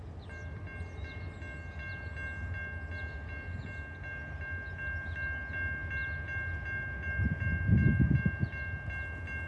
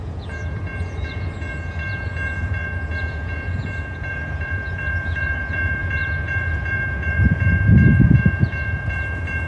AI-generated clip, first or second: second